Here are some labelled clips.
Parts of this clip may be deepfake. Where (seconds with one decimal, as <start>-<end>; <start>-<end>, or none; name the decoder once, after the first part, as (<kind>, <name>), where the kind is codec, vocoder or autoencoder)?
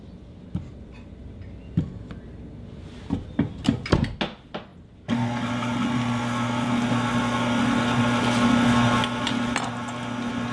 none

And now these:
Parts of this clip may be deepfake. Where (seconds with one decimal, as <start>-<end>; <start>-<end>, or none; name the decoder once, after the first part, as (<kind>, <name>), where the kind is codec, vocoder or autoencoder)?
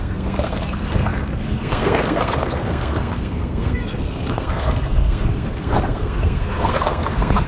0.0-7.5 (codec, SNAC)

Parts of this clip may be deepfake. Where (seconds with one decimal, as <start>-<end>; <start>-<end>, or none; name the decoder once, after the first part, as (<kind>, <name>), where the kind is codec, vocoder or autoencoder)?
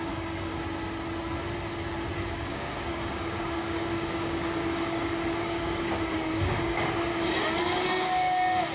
0.0-0.5 (codec, DAC); 2.3-7.1; 7.6-8.7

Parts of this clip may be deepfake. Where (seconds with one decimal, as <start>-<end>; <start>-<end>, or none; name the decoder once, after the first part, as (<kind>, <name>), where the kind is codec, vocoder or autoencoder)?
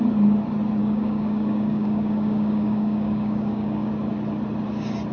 0.8-3.9 (codec, DAC)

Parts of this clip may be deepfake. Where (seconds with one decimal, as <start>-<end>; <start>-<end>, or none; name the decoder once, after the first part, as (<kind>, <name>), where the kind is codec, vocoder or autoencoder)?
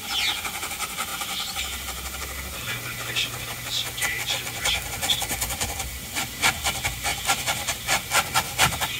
7.1-7.9 (vocoder, BigVGAN v2)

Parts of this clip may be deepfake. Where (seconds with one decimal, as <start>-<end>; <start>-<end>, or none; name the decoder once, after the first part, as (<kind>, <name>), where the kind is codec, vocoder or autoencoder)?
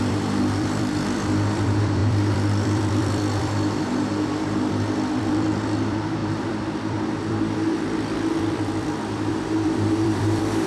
0.0-10.7 (vocoder, BigVGAN v2)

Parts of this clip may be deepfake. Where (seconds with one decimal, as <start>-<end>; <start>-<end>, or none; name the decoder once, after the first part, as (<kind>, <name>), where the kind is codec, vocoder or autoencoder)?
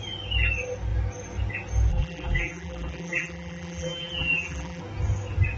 1.9-4.8 (vocoder, BigVGAN v2)